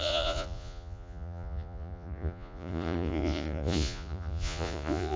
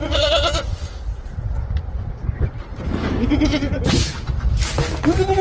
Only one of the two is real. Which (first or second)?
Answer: second